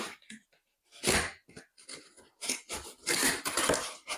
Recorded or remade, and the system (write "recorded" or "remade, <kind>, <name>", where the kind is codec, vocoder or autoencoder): recorded